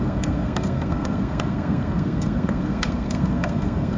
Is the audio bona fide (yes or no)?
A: no